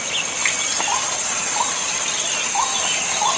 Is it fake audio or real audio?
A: real